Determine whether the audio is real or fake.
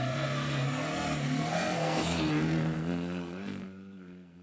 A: fake